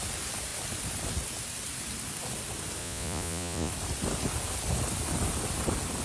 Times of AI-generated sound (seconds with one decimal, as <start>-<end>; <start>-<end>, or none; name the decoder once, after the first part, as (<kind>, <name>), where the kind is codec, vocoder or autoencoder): 2.8-3.7 (vocoder, Vocos)